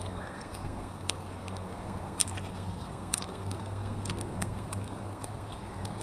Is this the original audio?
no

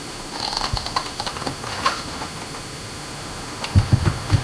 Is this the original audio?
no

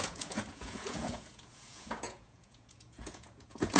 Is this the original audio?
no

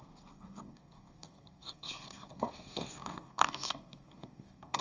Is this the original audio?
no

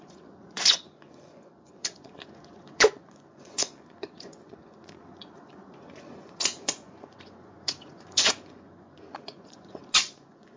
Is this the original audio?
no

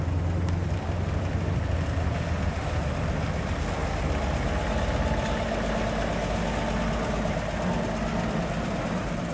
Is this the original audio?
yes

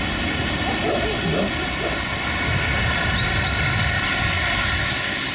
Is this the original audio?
yes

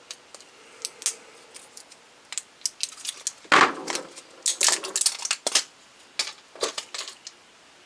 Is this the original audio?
yes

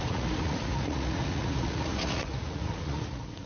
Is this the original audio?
no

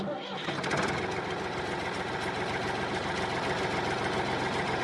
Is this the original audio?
yes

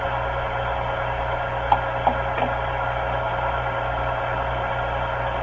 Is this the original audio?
yes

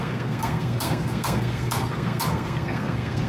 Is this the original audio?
no